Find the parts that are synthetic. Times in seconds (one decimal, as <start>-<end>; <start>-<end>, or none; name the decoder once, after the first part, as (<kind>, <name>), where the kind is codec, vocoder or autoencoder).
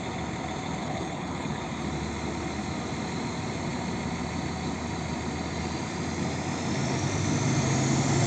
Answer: 0.8-1.6 (codec, HILCodec)